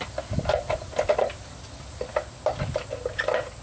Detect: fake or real real